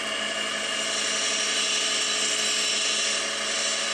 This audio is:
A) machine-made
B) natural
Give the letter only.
B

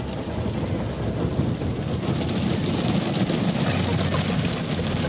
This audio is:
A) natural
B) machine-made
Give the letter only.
A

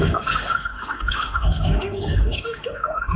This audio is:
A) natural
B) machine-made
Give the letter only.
B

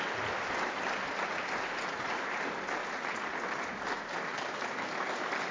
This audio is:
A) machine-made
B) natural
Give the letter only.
B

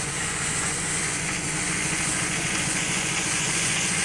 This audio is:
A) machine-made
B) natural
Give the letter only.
A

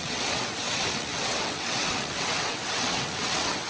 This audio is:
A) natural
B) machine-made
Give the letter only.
B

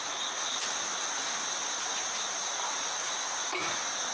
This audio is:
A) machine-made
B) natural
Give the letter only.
B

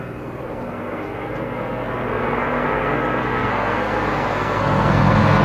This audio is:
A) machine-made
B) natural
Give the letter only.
A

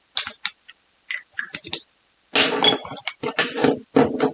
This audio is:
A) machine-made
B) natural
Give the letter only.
B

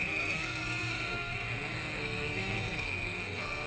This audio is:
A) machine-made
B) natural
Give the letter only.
A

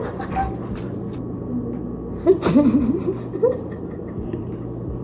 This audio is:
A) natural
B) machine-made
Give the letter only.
B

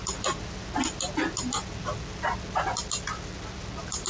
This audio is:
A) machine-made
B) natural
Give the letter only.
B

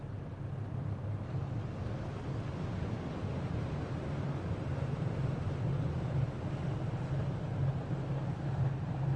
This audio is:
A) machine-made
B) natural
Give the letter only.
B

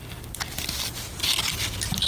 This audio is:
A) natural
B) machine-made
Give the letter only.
A